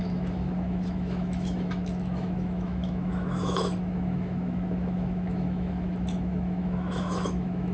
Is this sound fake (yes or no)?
yes